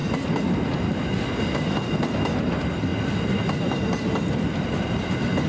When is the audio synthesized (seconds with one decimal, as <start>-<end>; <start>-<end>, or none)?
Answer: none